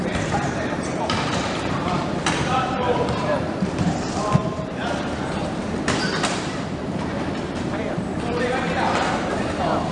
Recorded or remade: remade